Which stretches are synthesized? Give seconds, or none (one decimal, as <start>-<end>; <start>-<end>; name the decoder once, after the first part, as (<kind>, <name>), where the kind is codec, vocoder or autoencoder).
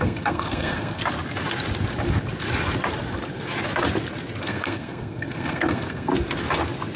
0.0-1.0 (codec, SNAC); 4.4-6.1